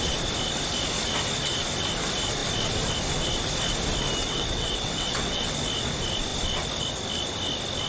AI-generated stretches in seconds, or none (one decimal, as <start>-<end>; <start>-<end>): 4.2-5.5

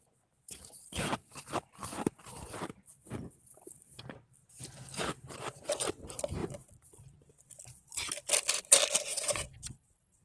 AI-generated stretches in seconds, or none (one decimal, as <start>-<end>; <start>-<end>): 9.1-10.2

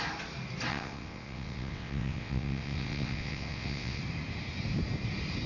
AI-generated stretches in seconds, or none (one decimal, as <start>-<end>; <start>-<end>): 0.7-4.0

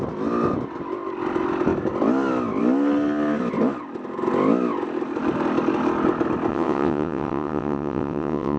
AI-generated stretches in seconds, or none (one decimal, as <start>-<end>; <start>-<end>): 6.5-8.6